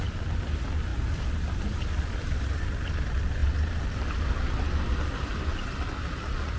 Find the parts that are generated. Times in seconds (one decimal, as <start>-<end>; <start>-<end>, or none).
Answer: none